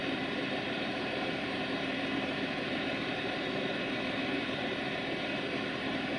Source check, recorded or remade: remade